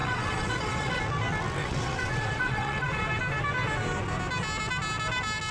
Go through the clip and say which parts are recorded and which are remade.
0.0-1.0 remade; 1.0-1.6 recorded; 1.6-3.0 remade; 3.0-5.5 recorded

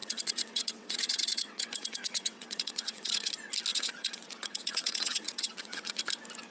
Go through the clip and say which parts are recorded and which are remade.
0.0-3.3 remade; 3.3-3.7 recorded; 3.7-6.0 remade; 6.0-6.5 recorded

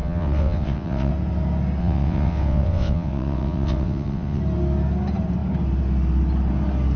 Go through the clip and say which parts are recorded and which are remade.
0.0-1.1 remade; 1.1-1.8 recorded; 1.8-4.4 remade; 4.4-7.0 recorded

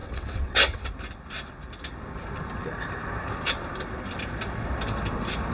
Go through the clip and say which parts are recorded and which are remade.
0.0-0.9 remade; 0.9-5.5 recorded

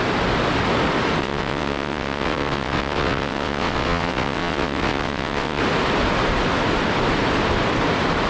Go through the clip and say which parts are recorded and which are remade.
0.0-1.2 recorded; 1.2-5.6 remade; 5.6-8.3 recorded

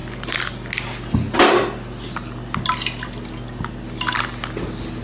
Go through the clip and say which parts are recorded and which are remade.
0.0-5.0 recorded

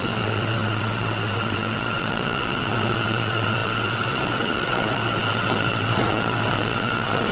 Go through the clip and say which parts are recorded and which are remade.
0.0-7.3 remade

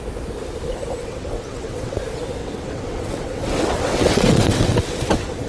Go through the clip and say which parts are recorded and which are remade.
0.0-1.0 recorded; 1.0-2.0 remade; 2.0-2.4 recorded; 2.4-5.5 remade